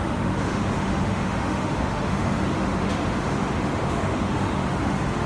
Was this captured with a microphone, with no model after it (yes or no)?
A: no